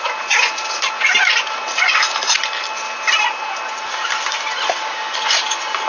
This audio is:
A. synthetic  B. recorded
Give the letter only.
B